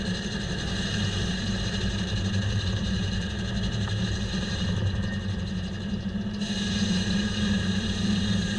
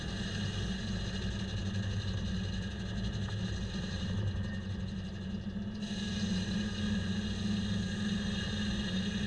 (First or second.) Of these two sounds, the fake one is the first